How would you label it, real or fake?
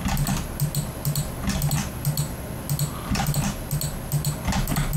real